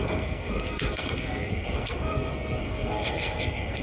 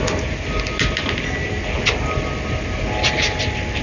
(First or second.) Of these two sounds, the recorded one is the second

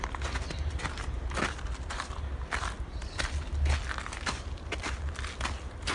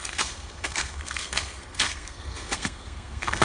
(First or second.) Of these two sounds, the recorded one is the first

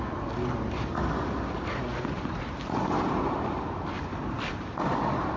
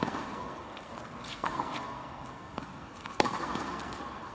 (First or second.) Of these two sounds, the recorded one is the first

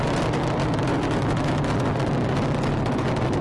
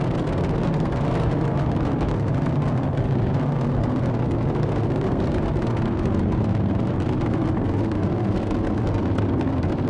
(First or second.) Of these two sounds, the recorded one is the first